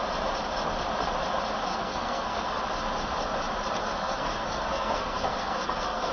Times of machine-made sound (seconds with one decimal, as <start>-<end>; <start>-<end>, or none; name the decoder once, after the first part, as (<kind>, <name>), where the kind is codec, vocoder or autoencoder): 1.7-2.6 (codec, SNAC); 3.8-6.1